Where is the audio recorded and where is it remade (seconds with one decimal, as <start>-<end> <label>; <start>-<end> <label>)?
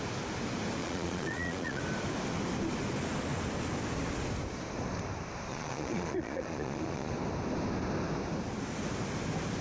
0.0-0.8 recorded; 0.8-1.8 remade; 1.8-5.5 recorded; 5.5-7.1 remade; 7.1-9.6 recorded